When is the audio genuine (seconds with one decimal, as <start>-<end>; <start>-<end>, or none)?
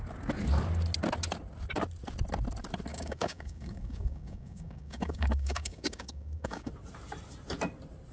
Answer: 0.0-2.9; 6.7-8.1